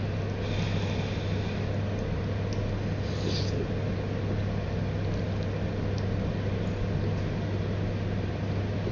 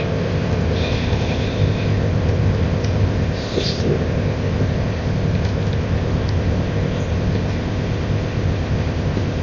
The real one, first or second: first